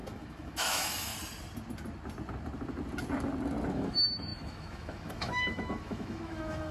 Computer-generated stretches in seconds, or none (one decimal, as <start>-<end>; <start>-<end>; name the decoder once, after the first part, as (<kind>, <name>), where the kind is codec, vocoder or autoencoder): 0.0-1.1 (autoencoder, DAC-VAE); 3.7-6.7